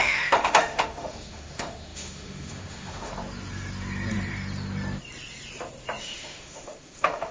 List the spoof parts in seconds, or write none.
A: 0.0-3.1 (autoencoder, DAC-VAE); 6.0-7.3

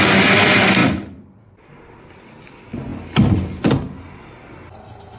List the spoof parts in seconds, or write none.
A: none

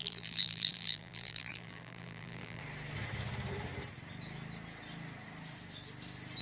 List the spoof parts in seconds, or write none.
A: 0.0-2.6 (vocoder, BigVGAN v2)

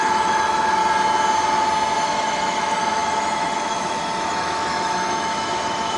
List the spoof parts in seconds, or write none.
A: 0.0-0.8 (autoencoder, DAC-VAE); 2.0-6.0

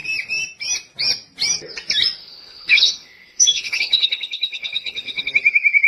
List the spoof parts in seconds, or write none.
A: 2.2-5.3 (codec, HILCodec)

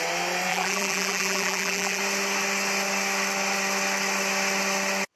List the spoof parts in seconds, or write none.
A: 0.5-2.0 (vocoder, BigVGAN v2)